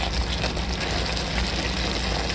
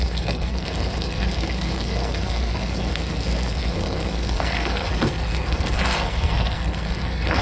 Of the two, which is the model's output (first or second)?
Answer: second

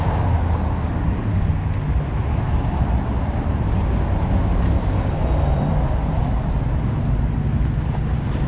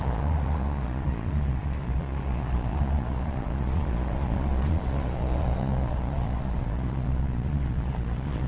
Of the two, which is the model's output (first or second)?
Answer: second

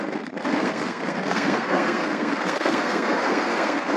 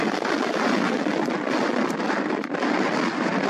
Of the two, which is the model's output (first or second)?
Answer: first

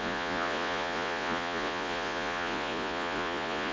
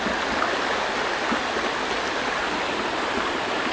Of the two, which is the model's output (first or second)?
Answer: first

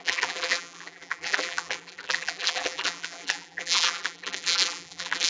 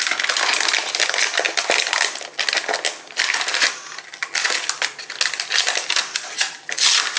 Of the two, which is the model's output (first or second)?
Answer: first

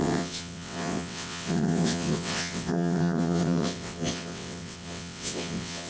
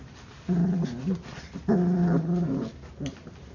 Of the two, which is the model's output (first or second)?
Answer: first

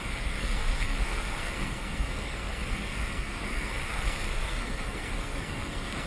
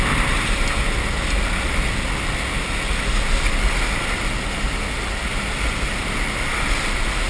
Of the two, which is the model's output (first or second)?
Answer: first